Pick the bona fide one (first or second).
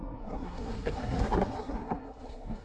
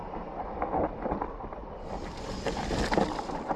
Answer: second